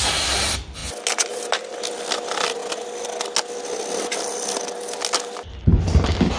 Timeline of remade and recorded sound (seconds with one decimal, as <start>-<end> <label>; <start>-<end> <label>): 0.0-0.8 remade; 0.8-2.0 recorded; 2.0-2.6 remade; 2.6-6.4 recorded